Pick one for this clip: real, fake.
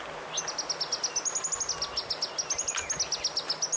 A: real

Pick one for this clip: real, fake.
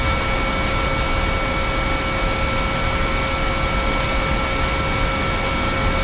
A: real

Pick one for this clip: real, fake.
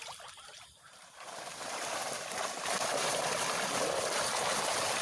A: fake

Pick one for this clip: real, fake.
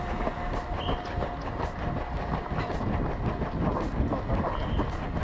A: real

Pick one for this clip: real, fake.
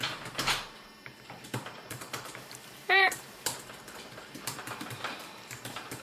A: fake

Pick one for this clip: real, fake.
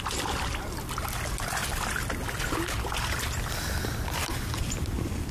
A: real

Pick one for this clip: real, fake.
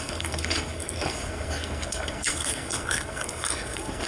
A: fake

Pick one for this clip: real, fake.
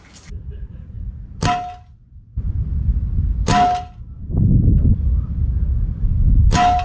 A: real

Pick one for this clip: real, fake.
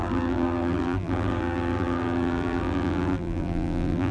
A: fake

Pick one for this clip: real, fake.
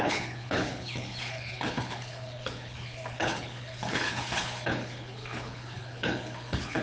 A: fake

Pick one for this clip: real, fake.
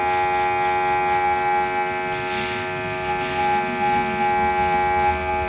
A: real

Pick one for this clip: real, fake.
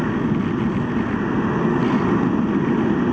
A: real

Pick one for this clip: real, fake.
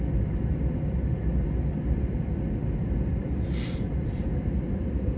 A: real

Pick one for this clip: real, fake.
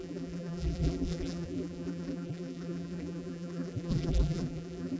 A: fake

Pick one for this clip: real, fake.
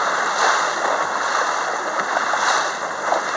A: real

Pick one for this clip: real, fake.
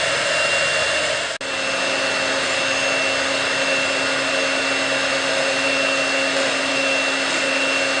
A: real